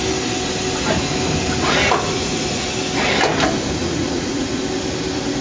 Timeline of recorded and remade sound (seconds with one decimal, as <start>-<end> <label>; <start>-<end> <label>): 0.0-1.8 recorded; 1.8-2.7 remade; 2.7-3.8 recorded; 3.8-4.6 remade; 4.6-5.4 recorded